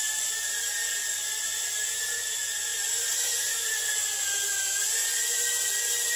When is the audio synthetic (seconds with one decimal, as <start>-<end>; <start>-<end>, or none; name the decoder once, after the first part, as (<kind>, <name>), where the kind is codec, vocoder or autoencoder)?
none